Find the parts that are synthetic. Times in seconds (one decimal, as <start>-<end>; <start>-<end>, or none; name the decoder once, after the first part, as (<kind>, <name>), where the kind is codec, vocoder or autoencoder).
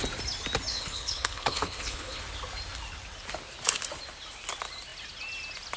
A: 0.7-2.2 (codec, HILCodec)